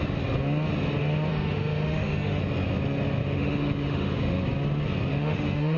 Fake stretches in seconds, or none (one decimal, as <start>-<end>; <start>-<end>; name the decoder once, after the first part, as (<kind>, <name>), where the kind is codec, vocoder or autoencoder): 1.3-2.4 (autoencoder, DAC-VAE); 3.2-4.4; 5.1-5.8